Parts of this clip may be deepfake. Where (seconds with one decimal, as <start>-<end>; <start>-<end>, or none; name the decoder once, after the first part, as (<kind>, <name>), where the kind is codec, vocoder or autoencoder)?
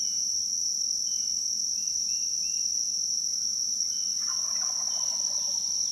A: none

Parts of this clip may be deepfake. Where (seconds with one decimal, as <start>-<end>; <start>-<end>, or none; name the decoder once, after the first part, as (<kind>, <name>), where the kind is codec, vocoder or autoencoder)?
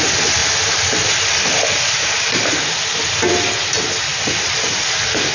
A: none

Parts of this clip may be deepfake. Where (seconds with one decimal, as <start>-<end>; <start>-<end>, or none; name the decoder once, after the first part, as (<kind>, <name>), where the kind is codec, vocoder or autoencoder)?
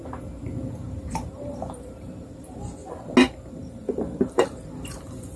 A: 0.7-2.8 (vocoder, BigVGAN v2); 3.5-5.4